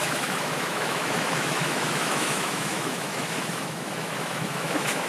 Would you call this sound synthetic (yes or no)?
yes